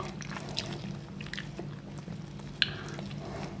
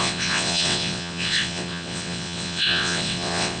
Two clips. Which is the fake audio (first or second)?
second